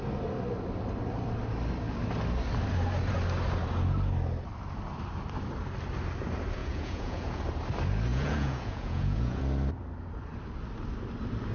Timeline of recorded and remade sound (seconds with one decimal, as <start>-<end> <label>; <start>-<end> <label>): 0.0-6.6 recorded; 6.6-7.4 remade; 7.4-8.1 recorded; 8.1-9.4 remade; 9.4-11.5 recorded